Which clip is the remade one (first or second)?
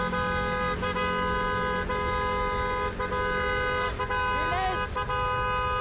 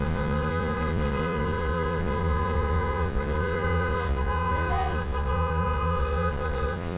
second